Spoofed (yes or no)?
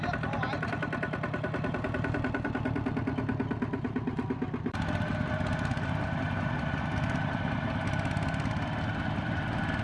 no